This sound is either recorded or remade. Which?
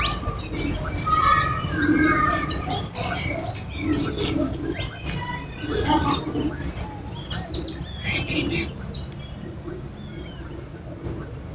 recorded